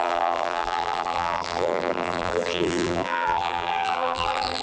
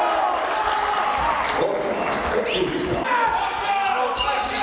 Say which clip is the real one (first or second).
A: second